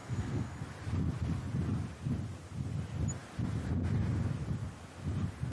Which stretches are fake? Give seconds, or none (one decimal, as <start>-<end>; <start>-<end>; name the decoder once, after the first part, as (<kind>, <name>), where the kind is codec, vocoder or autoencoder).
0.0-0.6 (codec, SNAC)